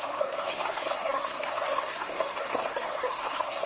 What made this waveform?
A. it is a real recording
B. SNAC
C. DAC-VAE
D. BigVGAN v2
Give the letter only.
B